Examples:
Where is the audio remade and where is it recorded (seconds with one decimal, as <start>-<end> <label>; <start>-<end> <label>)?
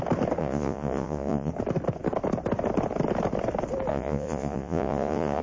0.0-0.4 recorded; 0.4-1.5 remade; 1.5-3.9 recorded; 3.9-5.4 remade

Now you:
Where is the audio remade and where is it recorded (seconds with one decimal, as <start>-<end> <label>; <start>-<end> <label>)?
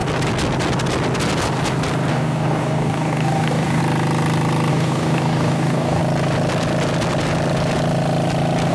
0.0-2.1 recorded; 2.1-3.8 remade; 3.8-4.7 recorded; 4.7-6.0 remade; 6.0-8.7 recorded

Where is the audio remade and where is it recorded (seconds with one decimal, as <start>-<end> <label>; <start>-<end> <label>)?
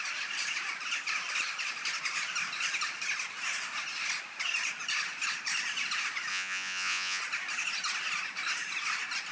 0.0-6.3 recorded; 6.3-7.2 remade; 7.2-9.3 recorded